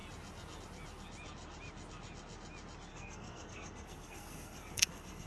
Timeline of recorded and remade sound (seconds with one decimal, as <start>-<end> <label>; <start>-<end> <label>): 0.0-2.9 recorded; 2.9-5.3 remade